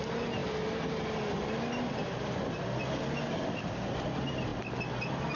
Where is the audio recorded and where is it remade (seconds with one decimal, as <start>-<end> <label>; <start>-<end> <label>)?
0.0-5.4 recorded